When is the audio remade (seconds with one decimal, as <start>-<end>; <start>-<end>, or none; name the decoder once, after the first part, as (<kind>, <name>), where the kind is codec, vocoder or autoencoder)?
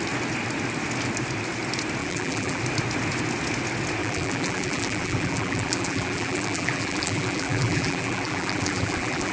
2.0-2.6 (vocoder, BigVGAN v2); 4.0-9.3